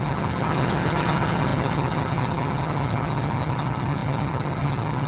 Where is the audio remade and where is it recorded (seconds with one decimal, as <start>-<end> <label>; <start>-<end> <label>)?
0.0-5.1 remade